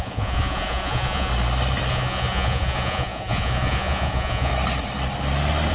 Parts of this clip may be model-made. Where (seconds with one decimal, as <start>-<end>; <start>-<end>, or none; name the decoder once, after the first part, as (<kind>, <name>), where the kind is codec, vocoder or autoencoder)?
0.0-1.3 (vocoder, Vocos); 1.9-4.5